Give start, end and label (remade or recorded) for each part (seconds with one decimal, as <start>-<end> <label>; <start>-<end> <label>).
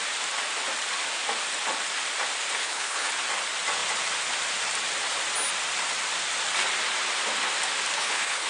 0.0-2.6 recorded; 2.6-3.1 remade; 3.1-7.9 recorded; 7.9-8.5 remade